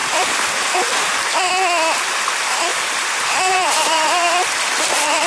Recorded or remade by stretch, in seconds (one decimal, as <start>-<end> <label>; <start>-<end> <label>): 0.0-1.5 remade; 1.5-2.7 recorded; 2.7-5.3 remade